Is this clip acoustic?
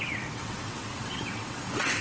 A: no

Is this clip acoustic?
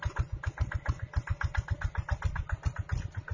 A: yes